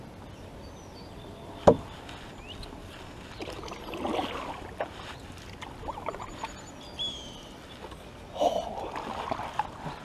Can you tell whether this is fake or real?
real